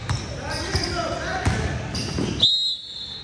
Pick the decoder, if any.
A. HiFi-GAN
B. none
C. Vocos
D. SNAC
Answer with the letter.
B